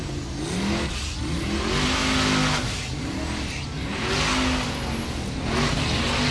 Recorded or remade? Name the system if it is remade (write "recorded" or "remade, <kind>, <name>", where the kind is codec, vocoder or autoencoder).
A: recorded